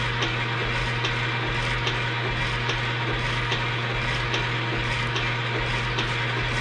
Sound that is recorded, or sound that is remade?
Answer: recorded